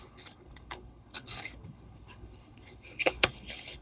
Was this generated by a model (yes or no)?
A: yes